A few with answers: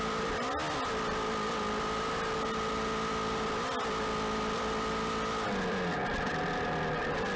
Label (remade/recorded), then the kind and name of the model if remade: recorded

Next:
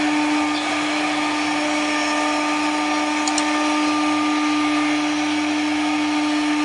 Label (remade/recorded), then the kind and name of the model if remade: recorded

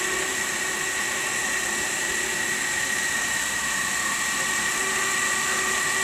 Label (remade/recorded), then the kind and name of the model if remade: recorded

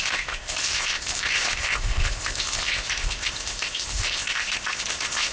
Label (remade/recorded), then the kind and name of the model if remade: remade, codec, ZipCodec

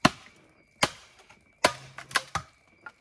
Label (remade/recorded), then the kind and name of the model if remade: recorded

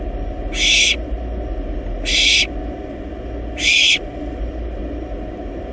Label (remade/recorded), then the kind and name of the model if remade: recorded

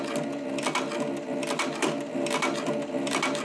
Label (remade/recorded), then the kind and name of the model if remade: recorded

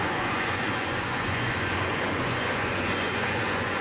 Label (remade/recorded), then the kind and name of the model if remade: remade, vocoder, Vocos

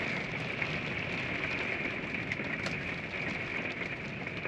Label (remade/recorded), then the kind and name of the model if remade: recorded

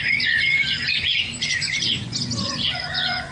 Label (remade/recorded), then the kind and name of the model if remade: remade, vocoder, Vocos